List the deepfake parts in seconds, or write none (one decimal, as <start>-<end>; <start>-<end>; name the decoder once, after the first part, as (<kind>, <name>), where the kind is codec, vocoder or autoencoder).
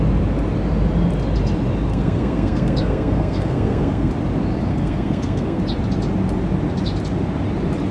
1.9-4.1 (codec, SNAC); 4.7-5.6